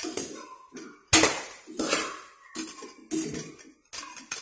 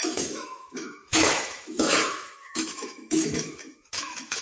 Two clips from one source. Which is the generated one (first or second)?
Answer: second